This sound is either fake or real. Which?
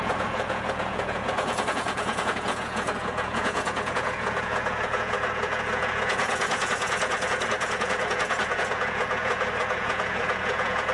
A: fake